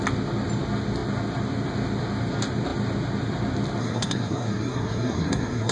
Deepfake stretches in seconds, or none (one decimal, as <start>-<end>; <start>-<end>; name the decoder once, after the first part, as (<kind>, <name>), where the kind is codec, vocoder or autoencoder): 3.8-5.7 (codec, SNAC)

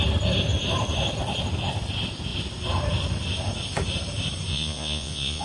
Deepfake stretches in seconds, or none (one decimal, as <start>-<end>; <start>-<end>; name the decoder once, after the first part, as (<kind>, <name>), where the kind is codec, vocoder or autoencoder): 4.5-5.4 (vocoder, Vocos)